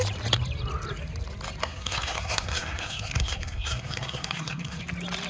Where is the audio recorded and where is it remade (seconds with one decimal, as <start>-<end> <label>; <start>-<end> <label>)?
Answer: 0.0-1.6 recorded; 1.6-4.8 remade; 4.8-5.3 recorded